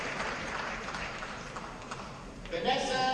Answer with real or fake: fake